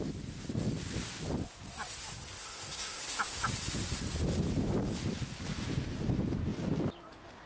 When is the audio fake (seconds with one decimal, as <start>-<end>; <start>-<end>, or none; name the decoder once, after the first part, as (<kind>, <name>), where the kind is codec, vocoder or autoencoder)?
2.4-3.0 (codec, SNAC)